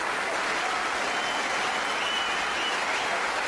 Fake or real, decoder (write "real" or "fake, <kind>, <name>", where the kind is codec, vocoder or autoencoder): real